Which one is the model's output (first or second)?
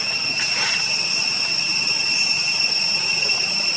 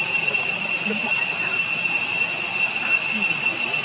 first